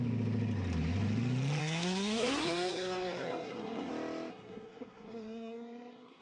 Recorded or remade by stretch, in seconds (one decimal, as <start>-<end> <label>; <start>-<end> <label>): 0.0-1.6 recorded; 1.6-3.9 remade; 3.9-4.3 recorded; 4.3-6.2 remade